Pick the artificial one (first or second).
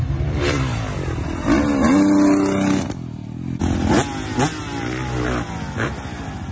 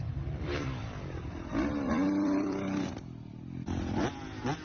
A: second